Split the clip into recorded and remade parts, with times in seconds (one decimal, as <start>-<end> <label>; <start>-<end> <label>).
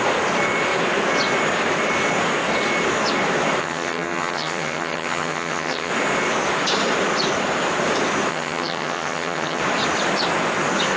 0.0-3.6 recorded; 3.6-5.9 remade; 5.9-8.3 recorded; 8.3-9.6 remade; 9.6-11.0 recorded